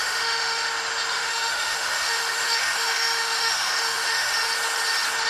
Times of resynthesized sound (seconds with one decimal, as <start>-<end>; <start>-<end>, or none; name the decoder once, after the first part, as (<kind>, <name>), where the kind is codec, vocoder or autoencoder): 0.0-0.7 (autoencoder, DAC-VAE); 1.1-4.3